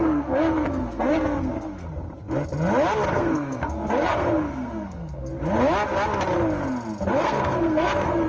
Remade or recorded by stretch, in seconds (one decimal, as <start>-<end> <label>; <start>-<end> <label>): 0.0-1.9 remade; 1.9-3.1 recorded; 3.1-5.3 remade; 5.3-7.1 recorded; 7.1-8.3 remade